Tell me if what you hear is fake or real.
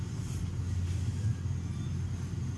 real